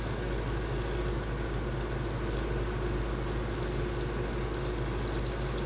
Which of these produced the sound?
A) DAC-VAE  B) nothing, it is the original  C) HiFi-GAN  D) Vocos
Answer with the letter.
B